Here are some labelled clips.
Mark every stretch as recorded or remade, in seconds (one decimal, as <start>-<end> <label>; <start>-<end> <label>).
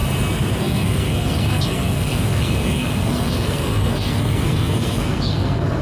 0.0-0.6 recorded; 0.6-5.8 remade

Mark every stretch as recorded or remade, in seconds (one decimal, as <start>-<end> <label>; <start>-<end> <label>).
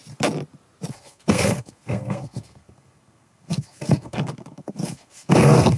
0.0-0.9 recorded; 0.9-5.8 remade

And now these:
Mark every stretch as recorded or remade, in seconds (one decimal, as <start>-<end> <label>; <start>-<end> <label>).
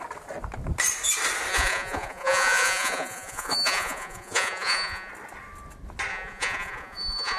0.0-1.5 recorded; 1.5-5.1 remade; 5.1-6.1 recorded; 6.1-7.4 remade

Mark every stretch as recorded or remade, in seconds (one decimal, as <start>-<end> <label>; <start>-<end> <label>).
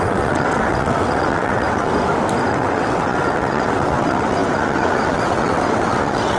0.0-1.9 remade; 1.9-2.5 recorded; 2.5-6.4 remade